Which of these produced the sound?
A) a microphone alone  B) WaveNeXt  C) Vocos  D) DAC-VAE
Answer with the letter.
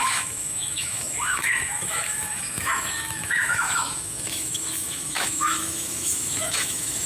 D